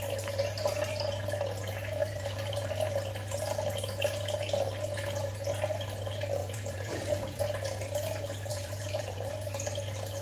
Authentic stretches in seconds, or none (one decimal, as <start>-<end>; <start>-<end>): 0.0-2.0; 2.7-6.4; 7.4-8.5; 9.3-10.2